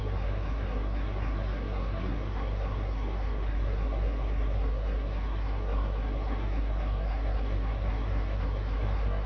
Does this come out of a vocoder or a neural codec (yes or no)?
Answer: yes